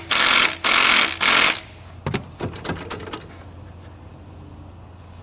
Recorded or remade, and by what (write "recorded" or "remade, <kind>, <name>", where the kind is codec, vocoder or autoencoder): recorded